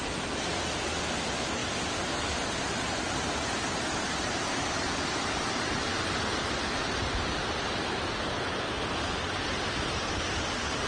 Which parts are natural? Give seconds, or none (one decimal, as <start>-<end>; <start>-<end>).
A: 0.0-10.9